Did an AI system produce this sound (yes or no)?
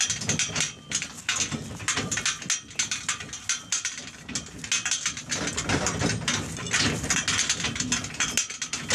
no